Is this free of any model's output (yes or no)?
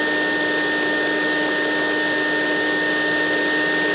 yes